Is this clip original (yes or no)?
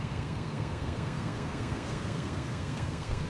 no